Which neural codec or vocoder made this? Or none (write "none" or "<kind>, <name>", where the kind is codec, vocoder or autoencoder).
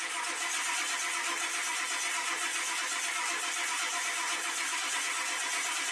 none